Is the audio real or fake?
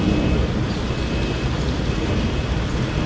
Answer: real